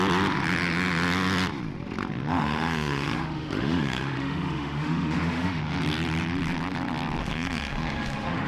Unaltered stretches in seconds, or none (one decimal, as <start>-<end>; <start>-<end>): 0.0-2.3; 5.6-7.2

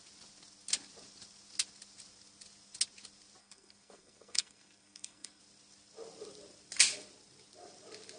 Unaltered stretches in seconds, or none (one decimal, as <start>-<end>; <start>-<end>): 0.0-3.4; 5.4-8.2

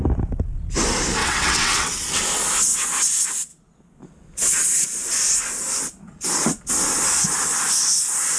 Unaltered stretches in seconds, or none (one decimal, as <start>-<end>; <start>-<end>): 0.0-1.2; 2.2-8.4

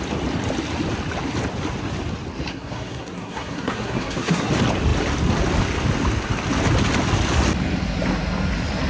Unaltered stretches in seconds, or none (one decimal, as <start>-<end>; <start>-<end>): 0.0-2.5; 4.5-8.9

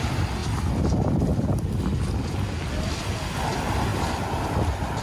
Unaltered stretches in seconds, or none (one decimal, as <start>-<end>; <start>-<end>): 0.0-5.0

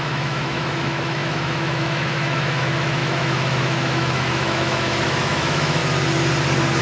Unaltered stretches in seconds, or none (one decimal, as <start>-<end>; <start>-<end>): 5.8-6.8

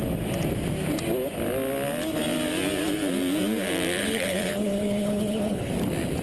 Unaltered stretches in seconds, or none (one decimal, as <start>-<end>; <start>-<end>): 0.0-4.0; 5.7-6.2

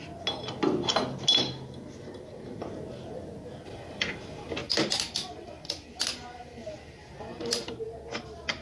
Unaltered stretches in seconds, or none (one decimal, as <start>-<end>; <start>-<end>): 0.0-8.6